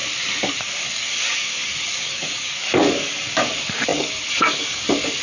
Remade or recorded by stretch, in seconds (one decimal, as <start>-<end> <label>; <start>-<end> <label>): 0.0-0.6 recorded; 0.6-5.2 remade